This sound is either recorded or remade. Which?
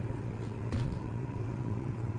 remade